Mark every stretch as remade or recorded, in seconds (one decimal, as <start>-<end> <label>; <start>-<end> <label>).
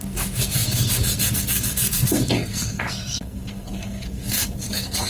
0.0-5.1 remade